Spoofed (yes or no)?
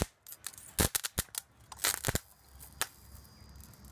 no